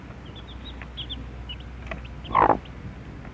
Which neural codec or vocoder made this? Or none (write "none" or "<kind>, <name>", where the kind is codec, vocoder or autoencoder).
none